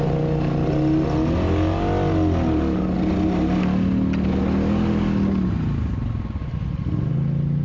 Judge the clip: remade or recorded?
recorded